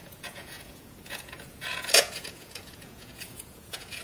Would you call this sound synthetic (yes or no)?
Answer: yes